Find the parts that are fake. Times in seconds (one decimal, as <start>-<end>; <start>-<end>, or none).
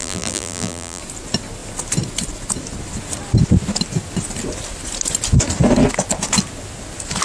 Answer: 0.0-1.0